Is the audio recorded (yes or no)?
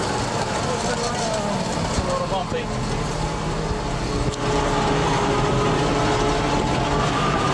yes